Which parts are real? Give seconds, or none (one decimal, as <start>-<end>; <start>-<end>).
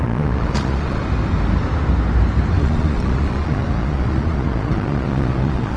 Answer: 1.0-2.6